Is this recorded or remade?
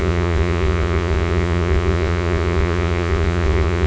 remade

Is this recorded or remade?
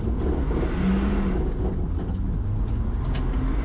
recorded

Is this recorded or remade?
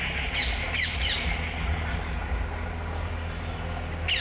recorded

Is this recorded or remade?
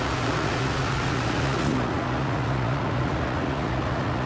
remade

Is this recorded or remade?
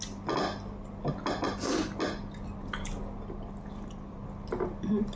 recorded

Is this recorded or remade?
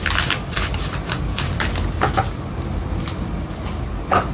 recorded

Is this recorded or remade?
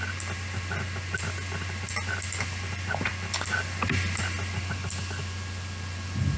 recorded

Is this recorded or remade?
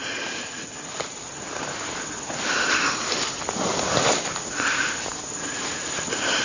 recorded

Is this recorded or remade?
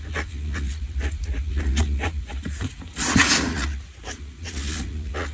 remade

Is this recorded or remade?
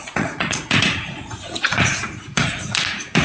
remade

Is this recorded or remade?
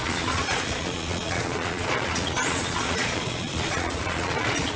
remade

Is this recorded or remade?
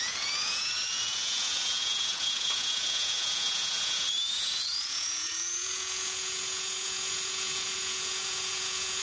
remade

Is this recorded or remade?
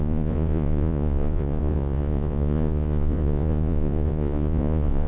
remade